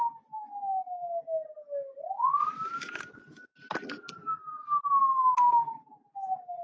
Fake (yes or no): no